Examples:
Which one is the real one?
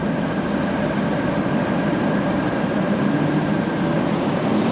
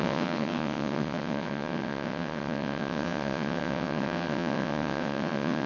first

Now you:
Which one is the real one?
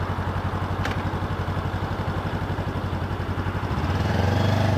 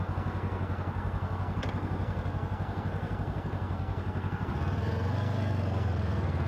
first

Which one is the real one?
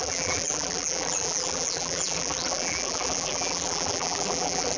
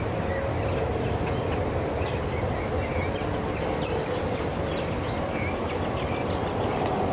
second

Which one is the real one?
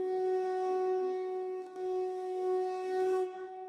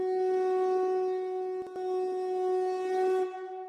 second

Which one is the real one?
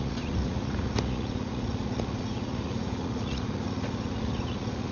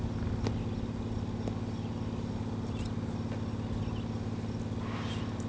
second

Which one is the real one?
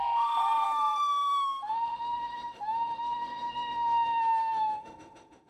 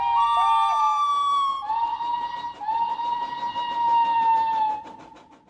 second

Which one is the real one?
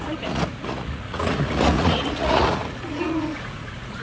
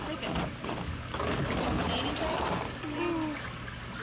second